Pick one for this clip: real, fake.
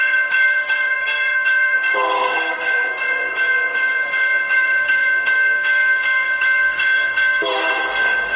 fake